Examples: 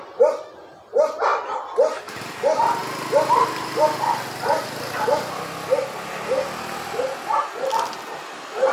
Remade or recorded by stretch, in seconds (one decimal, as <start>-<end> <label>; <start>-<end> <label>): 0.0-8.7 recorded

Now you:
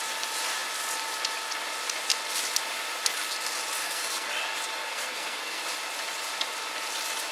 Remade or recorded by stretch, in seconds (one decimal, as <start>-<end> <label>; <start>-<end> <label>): 0.0-3.8 recorded; 3.8-4.3 remade; 4.3-4.8 recorded; 4.8-5.6 remade; 5.6-7.3 recorded

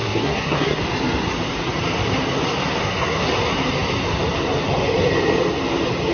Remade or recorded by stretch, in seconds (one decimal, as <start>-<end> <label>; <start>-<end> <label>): 0.0-0.8 remade; 0.8-2.8 recorded; 2.8-3.3 remade; 3.3-6.1 recorded

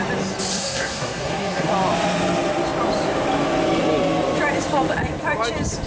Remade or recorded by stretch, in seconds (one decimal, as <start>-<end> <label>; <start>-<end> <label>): 0.0-0.5 recorded; 0.5-1.7 remade; 1.7-5.9 recorded

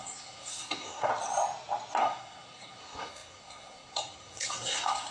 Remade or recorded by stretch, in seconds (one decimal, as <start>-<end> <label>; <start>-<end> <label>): 0.0-1.1 remade; 1.1-2.0 recorded; 2.0-5.1 remade

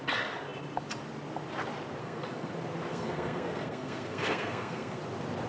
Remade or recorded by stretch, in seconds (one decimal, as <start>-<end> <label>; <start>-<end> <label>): 0.0-2.0 recorded; 2.0-2.5 remade; 2.5-2.9 recorded; 2.9-5.0 remade; 5.0-5.5 recorded